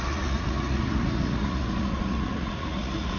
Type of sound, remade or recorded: remade